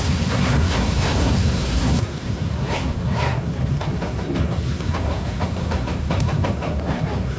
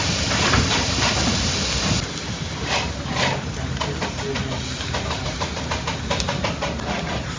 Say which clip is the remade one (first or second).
first